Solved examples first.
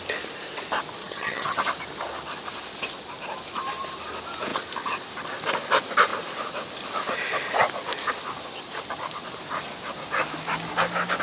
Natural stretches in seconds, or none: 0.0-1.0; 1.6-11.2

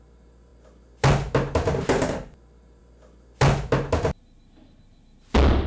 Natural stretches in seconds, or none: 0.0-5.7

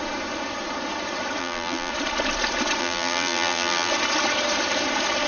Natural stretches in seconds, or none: 0.0-1.4; 1.9-2.8; 3.9-5.3